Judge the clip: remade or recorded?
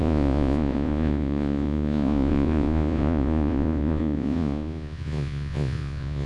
remade